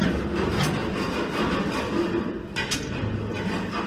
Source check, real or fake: real